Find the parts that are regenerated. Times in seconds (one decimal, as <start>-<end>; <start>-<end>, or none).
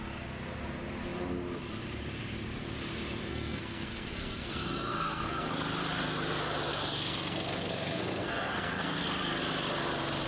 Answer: 3.3-5.6; 6.7-9.0